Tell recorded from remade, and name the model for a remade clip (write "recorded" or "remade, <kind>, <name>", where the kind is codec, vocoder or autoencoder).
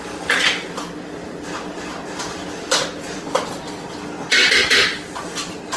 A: recorded